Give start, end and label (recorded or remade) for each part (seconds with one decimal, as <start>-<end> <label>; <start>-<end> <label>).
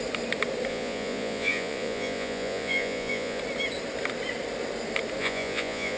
0.0-0.7 recorded; 0.7-3.4 remade; 3.4-5.2 recorded; 5.2-6.0 remade